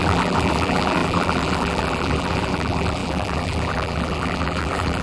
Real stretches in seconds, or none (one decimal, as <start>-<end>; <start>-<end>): none